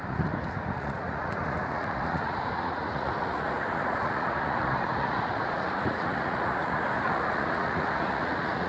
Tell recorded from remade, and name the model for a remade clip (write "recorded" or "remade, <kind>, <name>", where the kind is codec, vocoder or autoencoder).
remade, vocoder, Vocos